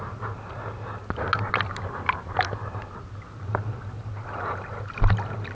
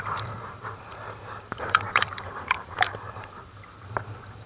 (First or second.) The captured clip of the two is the first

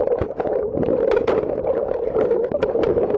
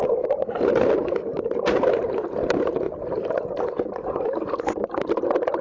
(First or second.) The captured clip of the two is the first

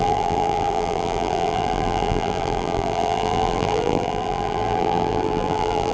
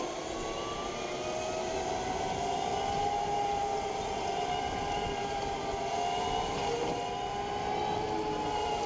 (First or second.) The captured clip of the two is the second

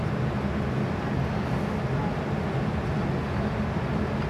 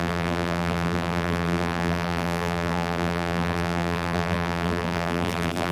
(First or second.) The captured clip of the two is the first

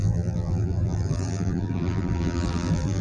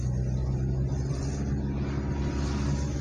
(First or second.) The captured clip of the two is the second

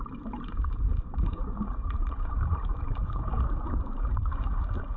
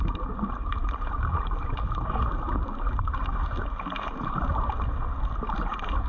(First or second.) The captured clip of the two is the second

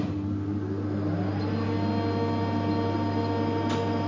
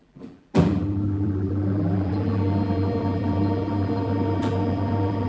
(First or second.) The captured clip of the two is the first